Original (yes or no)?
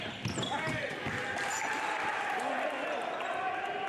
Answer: yes